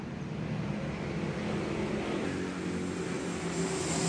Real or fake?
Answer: real